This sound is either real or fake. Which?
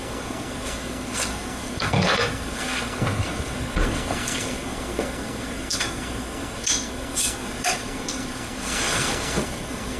fake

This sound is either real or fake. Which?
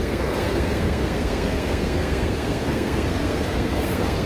fake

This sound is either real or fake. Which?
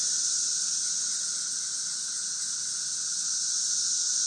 real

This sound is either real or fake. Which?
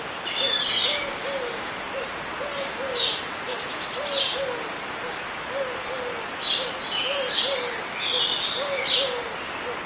real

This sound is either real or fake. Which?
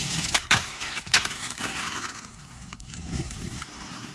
fake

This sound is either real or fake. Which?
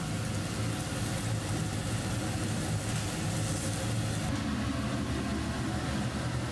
real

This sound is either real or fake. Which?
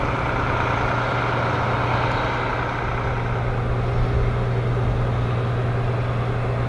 real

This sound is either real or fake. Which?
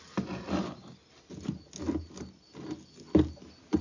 real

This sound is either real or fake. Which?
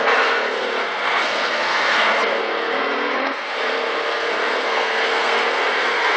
fake